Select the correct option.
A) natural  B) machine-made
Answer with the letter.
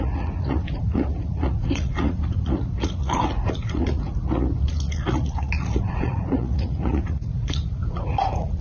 B